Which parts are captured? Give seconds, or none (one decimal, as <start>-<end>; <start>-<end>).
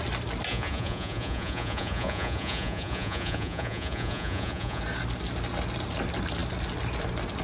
0.0-0.5; 4.8-7.4